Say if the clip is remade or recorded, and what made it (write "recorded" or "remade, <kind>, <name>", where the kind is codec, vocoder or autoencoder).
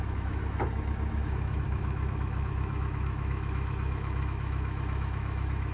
remade, autoencoder, DAC-VAE